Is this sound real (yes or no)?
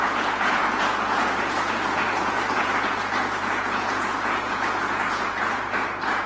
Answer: no